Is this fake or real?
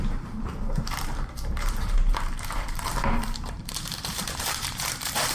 fake